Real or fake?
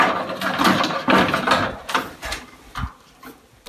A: real